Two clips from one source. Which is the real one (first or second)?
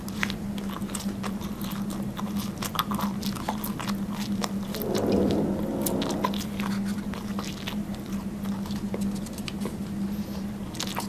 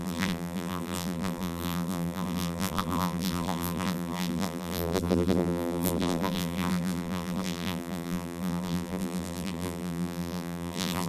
first